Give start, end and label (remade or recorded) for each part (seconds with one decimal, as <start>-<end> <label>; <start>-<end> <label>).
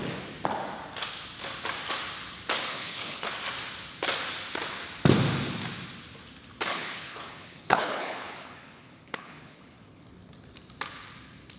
0.0-2.7 recorded; 2.7-3.3 remade; 3.3-6.7 recorded; 6.7-10.1 remade; 10.1-11.6 recorded